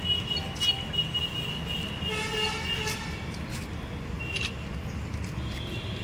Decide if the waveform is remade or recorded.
recorded